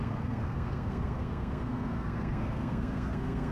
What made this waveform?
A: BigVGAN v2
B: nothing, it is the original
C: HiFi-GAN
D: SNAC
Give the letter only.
D